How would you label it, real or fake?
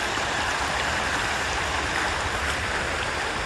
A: real